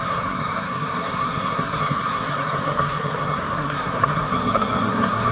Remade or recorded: remade